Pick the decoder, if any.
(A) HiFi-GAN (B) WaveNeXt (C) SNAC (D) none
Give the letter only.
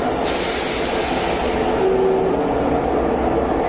D